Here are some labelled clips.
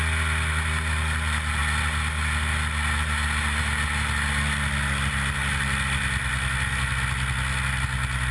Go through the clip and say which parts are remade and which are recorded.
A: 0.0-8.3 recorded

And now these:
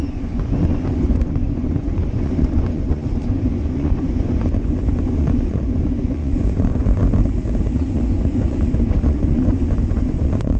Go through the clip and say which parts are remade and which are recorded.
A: 0.0-7.0 remade; 7.0-7.8 recorded; 7.8-10.6 remade